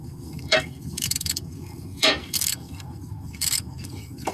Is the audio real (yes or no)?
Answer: no